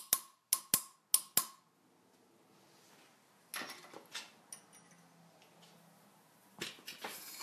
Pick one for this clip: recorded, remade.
recorded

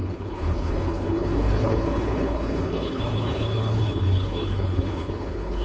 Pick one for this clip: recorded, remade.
remade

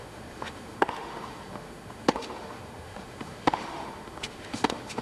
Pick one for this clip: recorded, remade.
remade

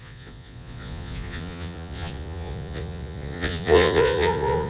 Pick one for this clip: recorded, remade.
remade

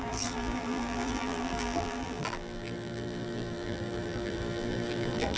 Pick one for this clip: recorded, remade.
remade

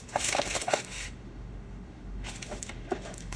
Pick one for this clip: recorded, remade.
remade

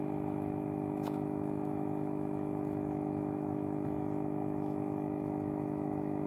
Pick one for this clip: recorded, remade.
remade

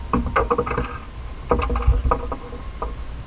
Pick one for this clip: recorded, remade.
recorded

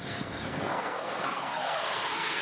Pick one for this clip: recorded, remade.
remade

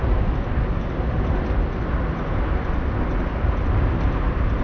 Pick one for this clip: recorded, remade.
recorded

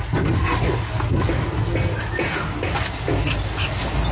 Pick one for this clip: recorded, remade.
recorded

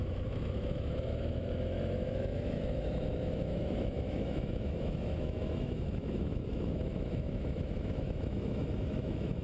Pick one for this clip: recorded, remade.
remade